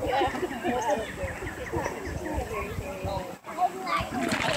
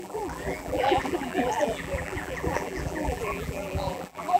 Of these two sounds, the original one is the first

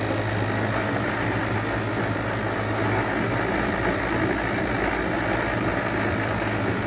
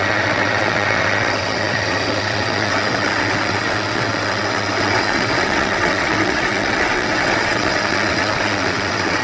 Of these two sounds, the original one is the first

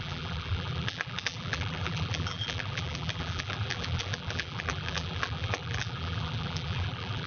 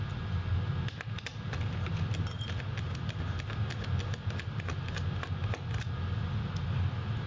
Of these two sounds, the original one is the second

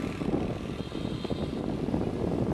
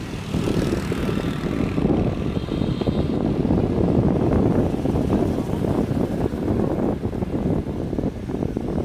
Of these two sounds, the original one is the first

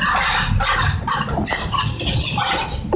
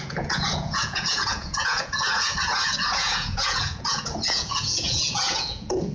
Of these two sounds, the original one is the first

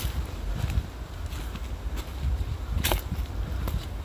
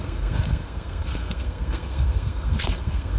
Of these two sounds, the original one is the first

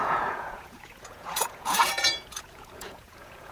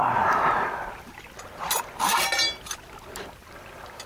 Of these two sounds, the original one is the second